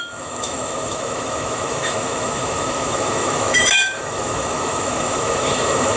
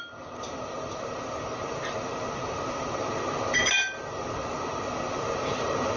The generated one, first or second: first